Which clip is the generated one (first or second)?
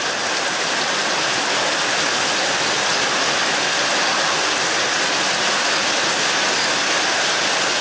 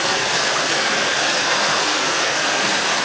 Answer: second